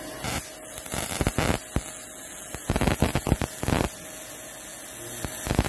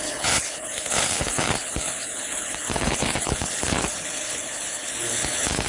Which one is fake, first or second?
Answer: second